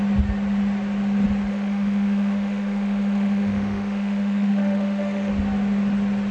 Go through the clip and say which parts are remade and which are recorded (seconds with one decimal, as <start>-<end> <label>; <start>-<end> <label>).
0.0-1.5 recorded; 1.5-5.3 remade; 5.3-6.3 recorded